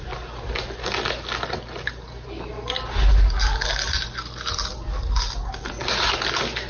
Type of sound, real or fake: real